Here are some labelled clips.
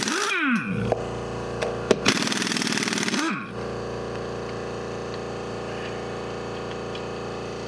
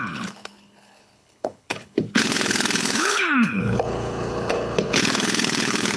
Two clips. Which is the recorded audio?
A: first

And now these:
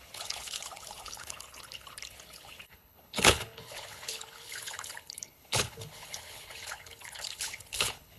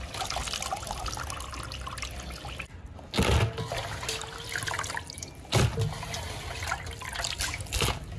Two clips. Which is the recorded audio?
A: second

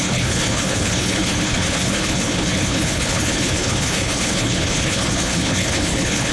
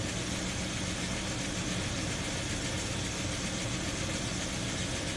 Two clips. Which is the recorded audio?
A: second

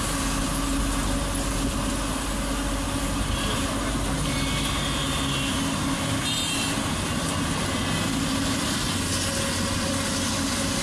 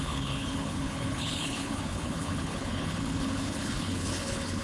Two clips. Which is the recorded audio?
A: first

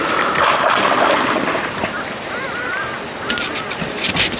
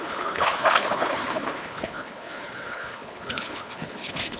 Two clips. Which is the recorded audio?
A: first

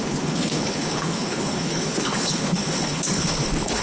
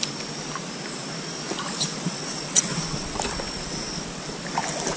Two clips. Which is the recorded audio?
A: second